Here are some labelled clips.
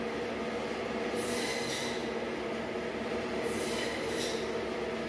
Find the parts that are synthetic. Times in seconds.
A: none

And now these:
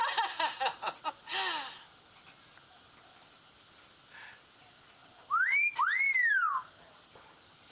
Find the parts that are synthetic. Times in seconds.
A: none